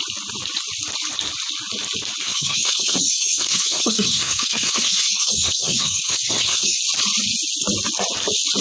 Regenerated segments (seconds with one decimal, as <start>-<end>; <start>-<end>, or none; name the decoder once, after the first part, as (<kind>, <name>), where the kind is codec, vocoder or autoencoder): 2.2-6.8 (codec, SNAC)

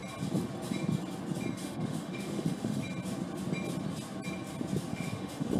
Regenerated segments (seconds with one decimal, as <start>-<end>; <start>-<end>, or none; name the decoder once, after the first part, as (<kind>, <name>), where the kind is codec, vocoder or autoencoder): 1.6-2.8 (autoencoder, DAC-VAE); 4.9-5.6

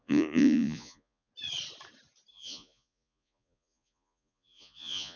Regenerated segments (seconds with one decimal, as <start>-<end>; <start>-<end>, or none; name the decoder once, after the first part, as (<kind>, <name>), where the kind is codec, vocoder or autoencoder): 0.0-1.3 (vocoder, Vocos); 2.3-5.2